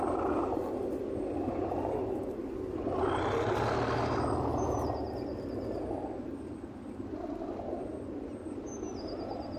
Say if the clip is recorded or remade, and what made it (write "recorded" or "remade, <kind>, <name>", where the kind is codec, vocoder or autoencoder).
recorded